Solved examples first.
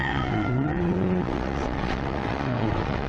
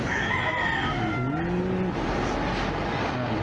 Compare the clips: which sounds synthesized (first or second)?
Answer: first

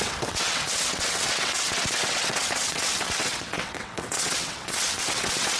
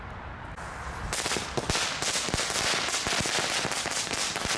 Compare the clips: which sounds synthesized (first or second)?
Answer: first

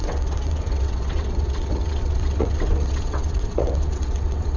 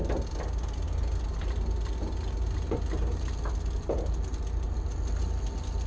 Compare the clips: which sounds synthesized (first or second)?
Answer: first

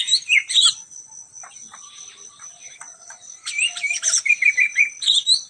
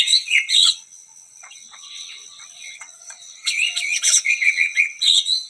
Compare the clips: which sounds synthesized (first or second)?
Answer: second